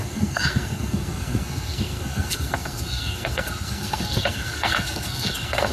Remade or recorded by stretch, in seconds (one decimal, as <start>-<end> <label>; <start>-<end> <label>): 0.0-5.7 remade